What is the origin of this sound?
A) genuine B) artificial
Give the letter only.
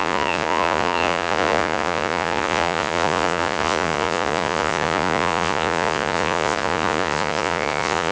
B